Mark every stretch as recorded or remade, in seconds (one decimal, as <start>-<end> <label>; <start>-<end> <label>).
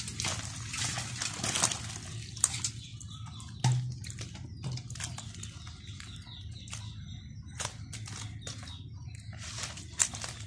0.0-10.5 recorded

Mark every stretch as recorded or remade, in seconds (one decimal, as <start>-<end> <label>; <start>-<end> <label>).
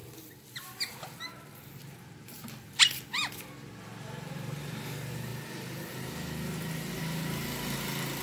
0.0-8.2 recorded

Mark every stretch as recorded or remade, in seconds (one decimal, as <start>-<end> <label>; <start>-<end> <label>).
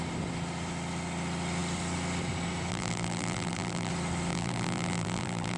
0.0-2.7 recorded; 2.7-3.9 remade; 3.9-4.3 recorded; 4.3-5.6 remade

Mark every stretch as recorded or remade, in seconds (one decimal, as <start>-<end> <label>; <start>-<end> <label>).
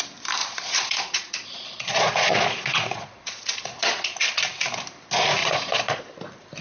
0.0-0.4 recorded; 0.4-4.4 remade; 4.4-5.4 recorded; 5.4-6.0 remade; 6.0-6.6 recorded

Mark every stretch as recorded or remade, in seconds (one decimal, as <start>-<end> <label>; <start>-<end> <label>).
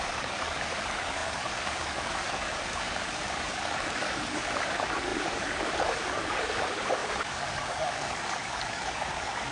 0.0-9.5 remade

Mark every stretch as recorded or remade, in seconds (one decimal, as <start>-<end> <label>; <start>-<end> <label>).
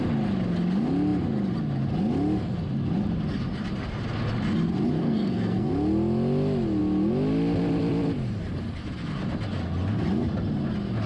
0.0-5.0 recorded; 5.0-5.7 remade; 5.7-11.1 recorded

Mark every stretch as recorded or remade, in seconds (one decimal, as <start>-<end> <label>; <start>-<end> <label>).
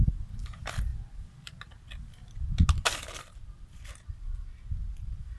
0.0-5.4 recorded